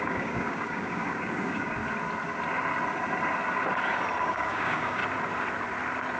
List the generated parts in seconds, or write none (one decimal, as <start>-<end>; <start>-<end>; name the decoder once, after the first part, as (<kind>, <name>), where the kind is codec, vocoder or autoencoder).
0.0-1.8 (codec, DAC); 4.2-5.0